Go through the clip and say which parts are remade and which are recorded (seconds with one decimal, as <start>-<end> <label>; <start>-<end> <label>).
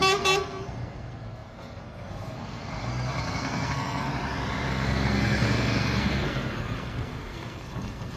0.0-4.1 remade; 4.1-4.7 recorded; 4.7-8.2 remade